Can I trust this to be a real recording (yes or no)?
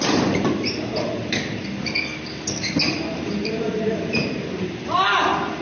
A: no